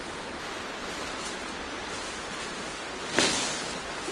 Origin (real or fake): real